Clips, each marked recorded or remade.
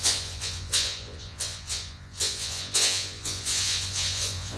remade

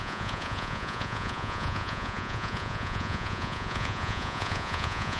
remade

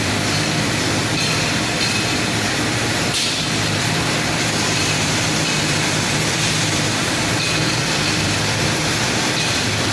remade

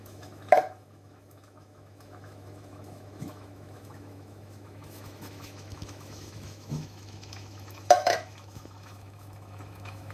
remade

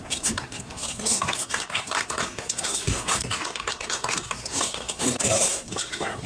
remade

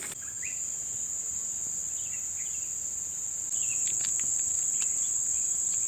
recorded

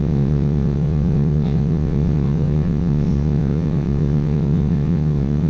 remade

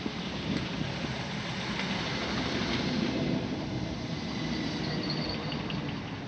recorded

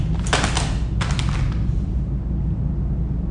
recorded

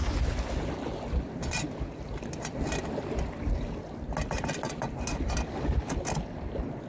recorded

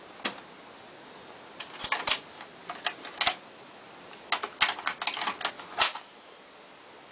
recorded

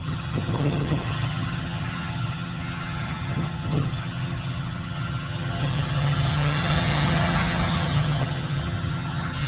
remade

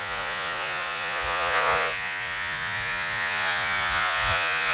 remade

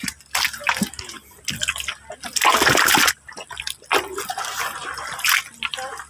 recorded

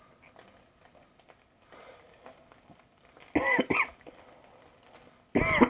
recorded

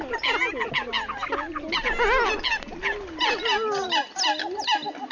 recorded